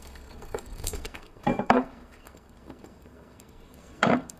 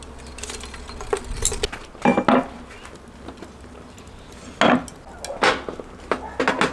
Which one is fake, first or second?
first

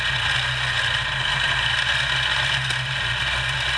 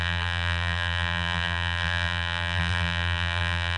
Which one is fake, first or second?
second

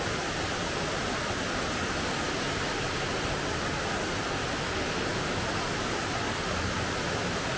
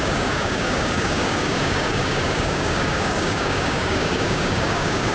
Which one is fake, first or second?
second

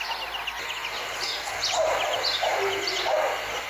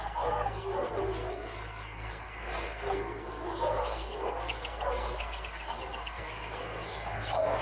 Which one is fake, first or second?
second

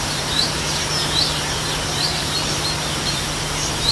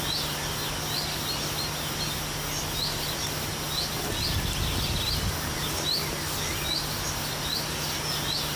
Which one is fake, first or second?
first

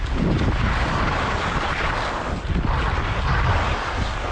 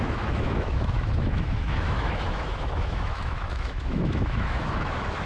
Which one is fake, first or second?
second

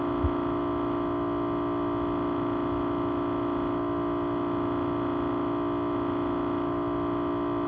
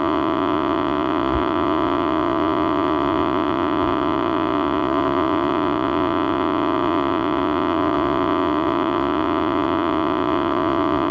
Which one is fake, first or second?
second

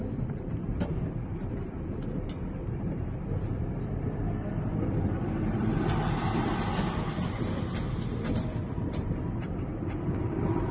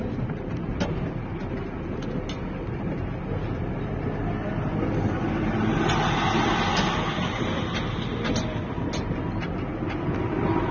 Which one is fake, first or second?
first